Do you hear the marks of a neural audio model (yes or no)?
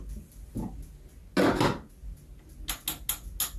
no